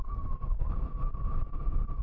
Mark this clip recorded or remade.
remade